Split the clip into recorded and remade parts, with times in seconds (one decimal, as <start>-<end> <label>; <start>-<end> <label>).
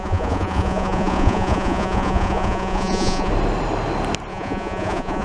0.0-3.3 remade; 3.3-4.3 recorded; 4.3-5.2 remade